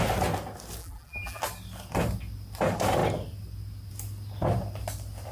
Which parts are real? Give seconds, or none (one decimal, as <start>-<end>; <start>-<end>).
0.0-0.8; 1.4-5.3